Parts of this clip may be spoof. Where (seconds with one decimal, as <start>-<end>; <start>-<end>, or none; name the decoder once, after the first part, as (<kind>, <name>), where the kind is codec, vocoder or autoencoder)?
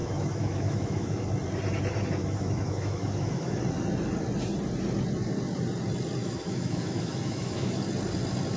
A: 0.0-1.3 (autoencoder, DAC-VAE); 2.2-3.6; 6.2-7.8